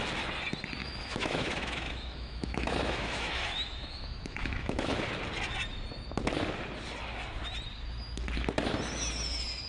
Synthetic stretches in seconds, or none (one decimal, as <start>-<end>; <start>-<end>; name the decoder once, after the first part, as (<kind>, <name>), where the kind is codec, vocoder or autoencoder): 0.8-4.9 (autoencoder, DAC-VAE)